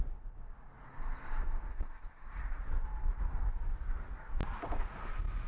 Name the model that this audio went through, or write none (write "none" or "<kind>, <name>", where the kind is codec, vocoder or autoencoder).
none